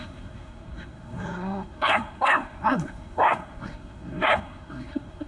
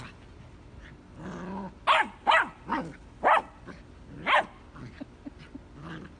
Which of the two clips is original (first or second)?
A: second